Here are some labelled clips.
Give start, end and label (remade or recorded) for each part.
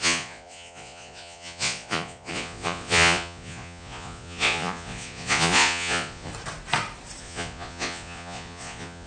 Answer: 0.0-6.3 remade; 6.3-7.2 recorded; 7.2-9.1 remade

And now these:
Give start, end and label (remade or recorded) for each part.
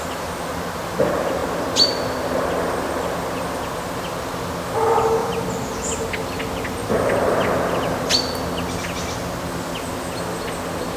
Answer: 0.0-5.2 recorded; 5.2-5.7 remade; 5.7-11.0 recorded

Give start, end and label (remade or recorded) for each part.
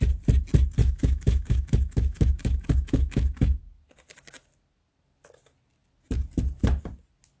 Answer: 0.0-0.8 recorded; 0.8-3.6 remade; 3.6-7.4 recorded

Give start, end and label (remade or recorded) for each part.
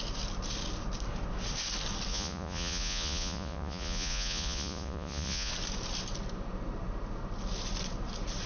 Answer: 0.0-2.1 recorded; 2.1-5.5 remade; 5.5-8.5 recorded